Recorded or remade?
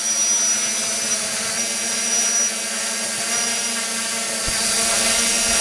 recorded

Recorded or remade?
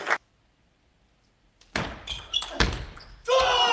recorded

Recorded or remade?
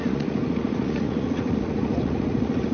remade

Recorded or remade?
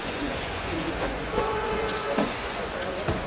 remade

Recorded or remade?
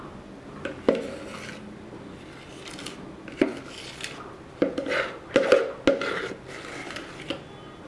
recorded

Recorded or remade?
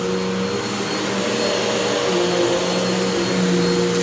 recorded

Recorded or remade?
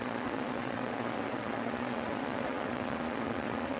remade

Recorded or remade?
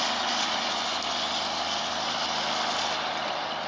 recorded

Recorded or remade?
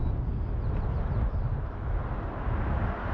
recorded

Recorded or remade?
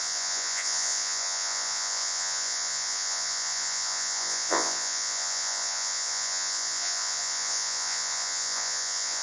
remade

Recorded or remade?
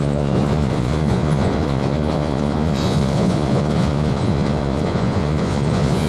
remade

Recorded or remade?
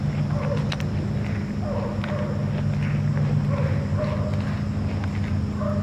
recorded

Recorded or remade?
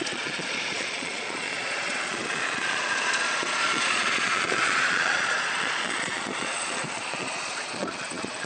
remade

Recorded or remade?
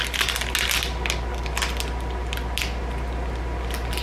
recorded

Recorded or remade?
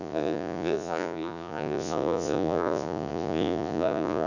remade